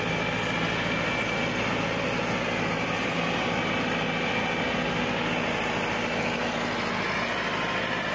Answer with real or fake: real